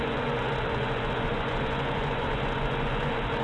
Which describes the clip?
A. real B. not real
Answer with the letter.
B